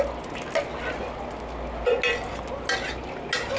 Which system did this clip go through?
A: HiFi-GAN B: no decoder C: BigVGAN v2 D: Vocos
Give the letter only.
B